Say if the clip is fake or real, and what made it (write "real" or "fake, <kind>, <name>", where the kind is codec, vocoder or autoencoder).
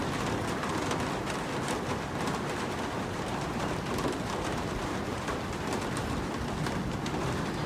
real